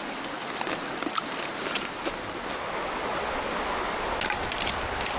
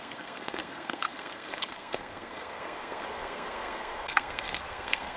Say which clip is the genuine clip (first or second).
first